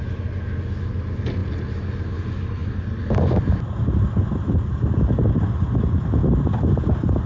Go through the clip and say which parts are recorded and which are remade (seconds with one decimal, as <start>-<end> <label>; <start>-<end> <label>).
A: 0.0-7.3 recorded